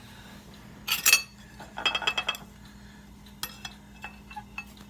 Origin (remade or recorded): recorded